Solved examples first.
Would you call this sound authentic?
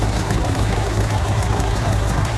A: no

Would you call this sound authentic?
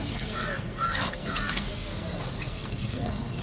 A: no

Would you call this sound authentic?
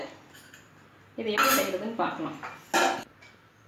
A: yes